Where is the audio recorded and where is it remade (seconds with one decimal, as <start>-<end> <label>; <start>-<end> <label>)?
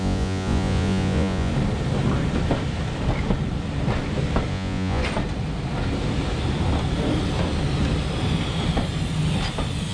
0.0-1.5 remade; 1.5-4.5 recorded; 4.5-5.0 remade; 5.0-9.9 recorded